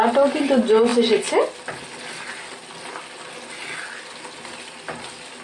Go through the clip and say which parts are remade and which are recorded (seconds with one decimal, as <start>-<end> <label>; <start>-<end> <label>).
0.0-5.4 recorded